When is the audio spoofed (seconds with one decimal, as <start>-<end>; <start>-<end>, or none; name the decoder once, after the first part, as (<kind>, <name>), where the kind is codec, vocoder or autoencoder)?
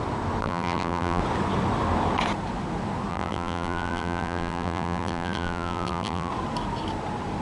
0.4-1.2 (vocoder, BigVGAN v2); 3.1-6.3